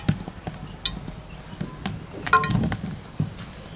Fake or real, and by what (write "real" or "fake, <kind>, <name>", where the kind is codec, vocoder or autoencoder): real